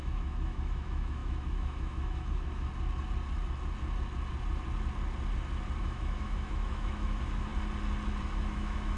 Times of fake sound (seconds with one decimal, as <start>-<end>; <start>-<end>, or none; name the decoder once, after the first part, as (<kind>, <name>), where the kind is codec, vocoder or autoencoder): 0.0-2.7 (autoencoder, DAC-VAE); 5.8-7.5; 8.2-9.0